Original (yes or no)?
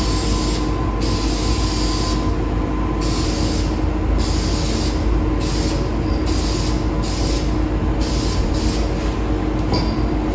yes